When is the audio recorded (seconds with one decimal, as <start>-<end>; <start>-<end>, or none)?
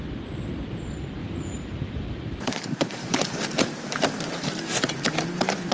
0.0-1.2; 4.6-5.7